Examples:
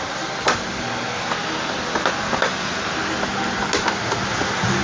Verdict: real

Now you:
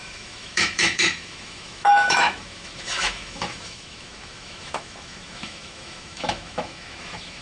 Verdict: fake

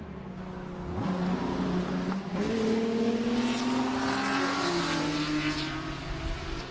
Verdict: real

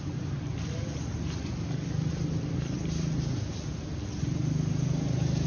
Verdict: real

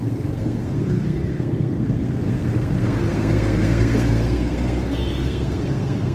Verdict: fake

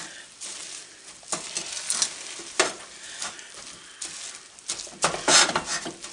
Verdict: real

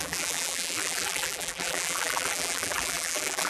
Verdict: fake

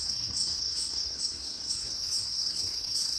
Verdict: fake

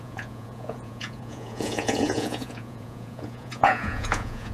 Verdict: fake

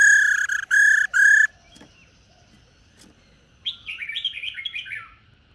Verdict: real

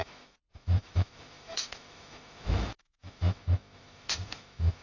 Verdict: fake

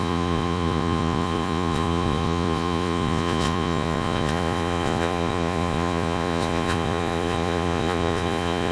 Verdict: fake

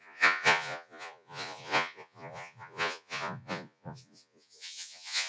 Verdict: fake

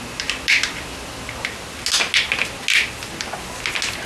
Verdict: real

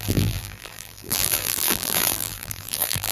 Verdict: fake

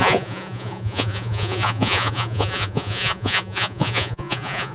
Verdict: fake